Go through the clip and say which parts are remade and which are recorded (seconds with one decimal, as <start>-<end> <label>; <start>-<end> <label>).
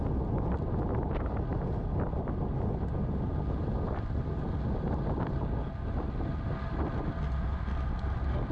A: 0.0-8.5 recorded